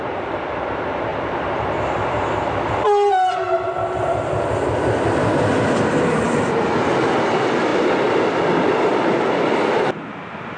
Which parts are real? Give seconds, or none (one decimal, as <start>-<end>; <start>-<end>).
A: 0.0-10.6